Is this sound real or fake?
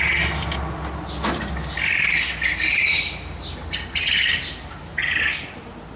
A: real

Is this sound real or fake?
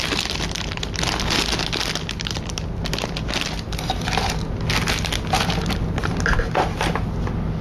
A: real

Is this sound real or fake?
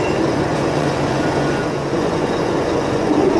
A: fake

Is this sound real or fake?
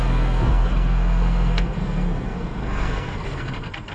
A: fake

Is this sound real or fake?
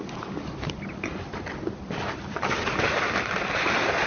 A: real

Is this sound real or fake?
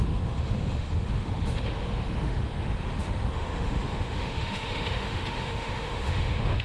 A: fake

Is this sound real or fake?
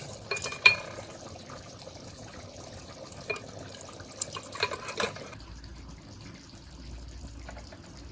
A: real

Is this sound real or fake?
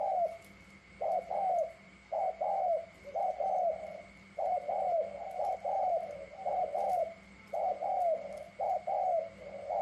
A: real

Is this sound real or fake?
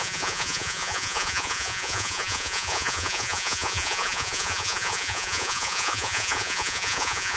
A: fake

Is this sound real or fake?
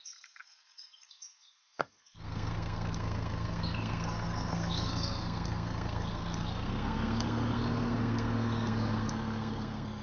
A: fake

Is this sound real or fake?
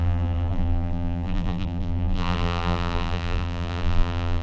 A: fake